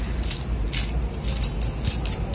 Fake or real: real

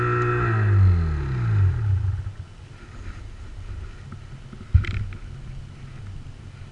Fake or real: real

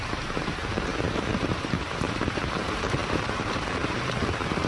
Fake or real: fake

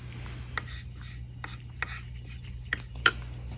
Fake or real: real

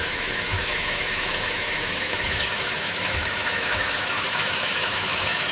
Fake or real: fake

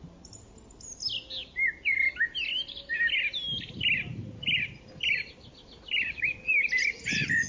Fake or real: real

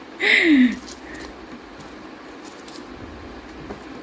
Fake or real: real